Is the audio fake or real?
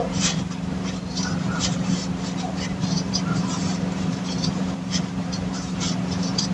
fake